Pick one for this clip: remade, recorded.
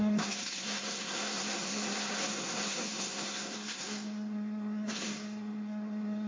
remade